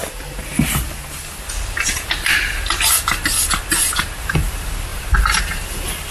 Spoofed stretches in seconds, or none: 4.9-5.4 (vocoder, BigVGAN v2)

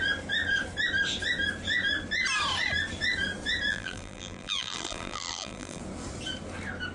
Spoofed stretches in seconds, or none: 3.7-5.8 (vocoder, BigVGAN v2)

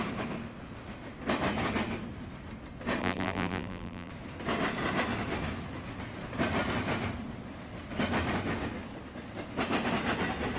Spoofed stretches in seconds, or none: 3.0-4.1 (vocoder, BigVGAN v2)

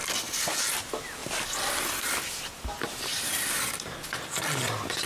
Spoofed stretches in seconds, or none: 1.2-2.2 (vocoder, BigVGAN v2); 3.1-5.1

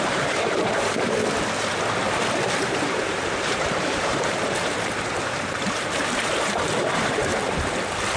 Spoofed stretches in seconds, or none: 0.0-1.2 (vocoder, BigVGAN v2); 2.6-7.3